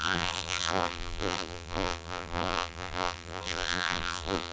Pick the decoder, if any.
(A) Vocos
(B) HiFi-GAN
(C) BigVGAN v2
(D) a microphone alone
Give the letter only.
C